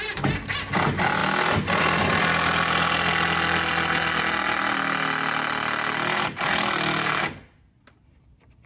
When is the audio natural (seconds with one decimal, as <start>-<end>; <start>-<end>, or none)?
0.0-8.7